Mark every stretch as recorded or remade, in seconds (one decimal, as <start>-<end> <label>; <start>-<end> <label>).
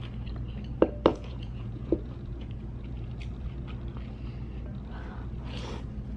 0.0-1.1 recorded; 1.1-3.1 remade; 3.1-6.2 recorded